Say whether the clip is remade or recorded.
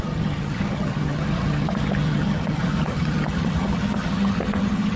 remade